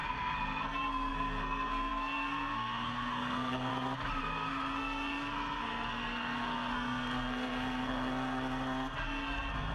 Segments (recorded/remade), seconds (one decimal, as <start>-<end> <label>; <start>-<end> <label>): 0.0-3.7 remade; 3.7-4.2 recorded; 4.2-9.7 remade